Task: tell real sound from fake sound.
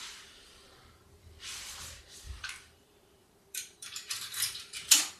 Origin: fake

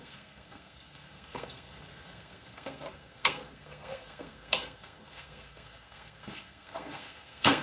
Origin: fake